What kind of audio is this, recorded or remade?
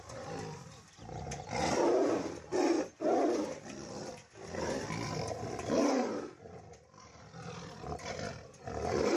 recorded